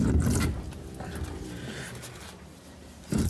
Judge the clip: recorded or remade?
recorded